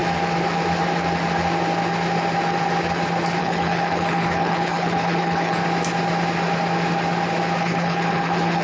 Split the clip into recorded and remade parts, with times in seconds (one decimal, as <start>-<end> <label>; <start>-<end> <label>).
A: 0.0-3.4 recorded; 3.4-5.6 remade; 5.6-7.6 recorded; 7.6-8.6 remade